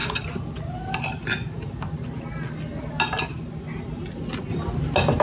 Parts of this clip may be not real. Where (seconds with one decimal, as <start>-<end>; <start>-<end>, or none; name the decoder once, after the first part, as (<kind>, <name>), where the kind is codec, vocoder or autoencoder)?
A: none